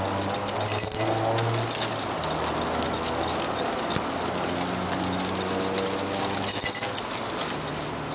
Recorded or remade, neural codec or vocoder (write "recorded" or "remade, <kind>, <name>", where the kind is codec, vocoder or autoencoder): recorded